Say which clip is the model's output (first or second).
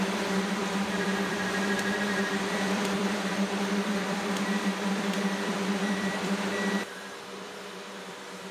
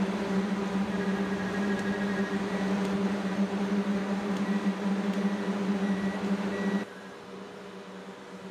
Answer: first